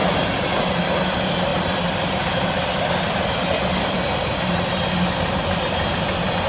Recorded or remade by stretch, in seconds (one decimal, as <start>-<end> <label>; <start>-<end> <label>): 0.0-6.5 recorded